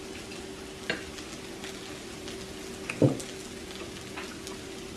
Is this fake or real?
real